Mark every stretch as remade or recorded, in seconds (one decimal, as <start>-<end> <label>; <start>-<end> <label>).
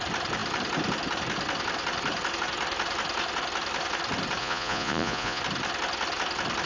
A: 0.0-4.4 recorded; 4.4-5.4 remade; 5.4-6.7 recorded